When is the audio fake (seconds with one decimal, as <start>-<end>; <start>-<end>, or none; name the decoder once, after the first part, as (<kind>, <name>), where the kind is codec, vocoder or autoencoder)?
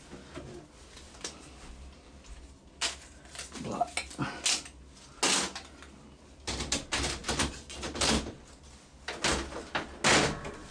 none